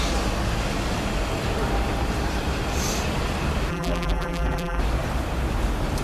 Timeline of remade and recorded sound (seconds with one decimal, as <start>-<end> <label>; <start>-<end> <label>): 0.0-3.7 recorded; 3.7-4.8 remade; 4.8-6.0 recorded